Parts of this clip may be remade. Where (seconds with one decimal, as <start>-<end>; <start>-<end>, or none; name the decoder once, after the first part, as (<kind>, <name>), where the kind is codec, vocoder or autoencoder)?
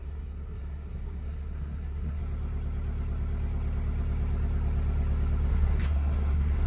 0.0-2.2 (codec, SNAC); 5.5-6.7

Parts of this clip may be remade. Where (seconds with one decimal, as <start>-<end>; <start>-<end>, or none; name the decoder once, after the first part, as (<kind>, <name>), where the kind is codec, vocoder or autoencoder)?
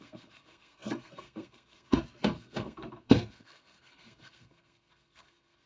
0.0-5.7 (codec, SNAC)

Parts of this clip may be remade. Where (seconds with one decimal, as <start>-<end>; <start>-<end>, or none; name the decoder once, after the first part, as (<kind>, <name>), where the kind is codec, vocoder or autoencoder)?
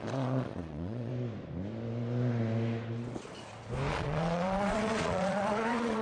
0.0-1.1 (vocoder, Vocos); 3.9-6.0